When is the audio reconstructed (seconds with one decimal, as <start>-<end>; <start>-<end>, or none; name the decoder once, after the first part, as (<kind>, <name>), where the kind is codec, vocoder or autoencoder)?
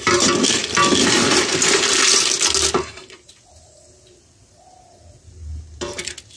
none